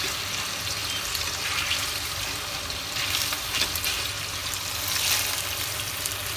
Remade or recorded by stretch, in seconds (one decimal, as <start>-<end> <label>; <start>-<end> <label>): 0.0-0.8 recorded; 0.8-3.8 remade; 3.8-6.4 recorded